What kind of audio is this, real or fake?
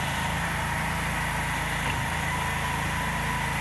real